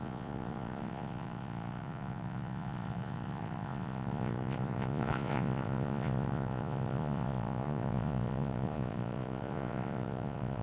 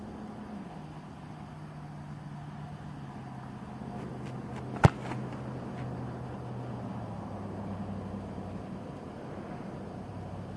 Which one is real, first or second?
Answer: second